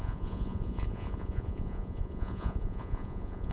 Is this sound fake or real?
fake